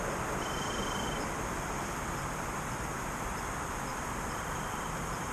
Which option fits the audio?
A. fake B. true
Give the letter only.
A